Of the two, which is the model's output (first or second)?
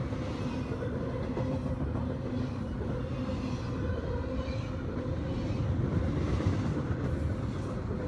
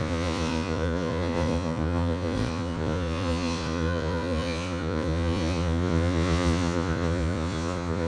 second